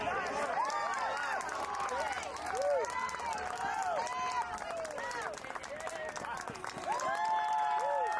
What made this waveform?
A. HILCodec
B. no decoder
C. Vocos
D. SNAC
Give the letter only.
B